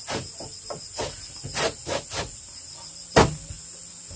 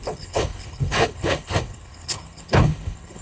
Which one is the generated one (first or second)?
second